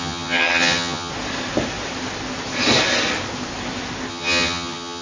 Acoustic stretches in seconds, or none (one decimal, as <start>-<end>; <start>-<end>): 1.1-4.1